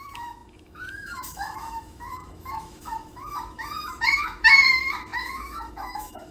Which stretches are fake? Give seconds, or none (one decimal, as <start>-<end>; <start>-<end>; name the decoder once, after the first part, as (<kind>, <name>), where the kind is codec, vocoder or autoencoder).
0.0-6.3 (autoencoder, DAC-VAE)